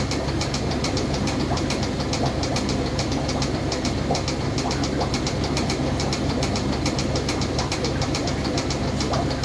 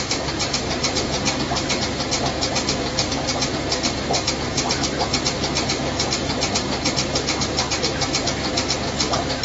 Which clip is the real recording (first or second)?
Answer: second